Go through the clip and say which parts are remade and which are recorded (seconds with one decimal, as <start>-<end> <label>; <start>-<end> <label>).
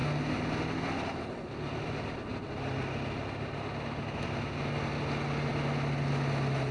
0.0-6.7 recorded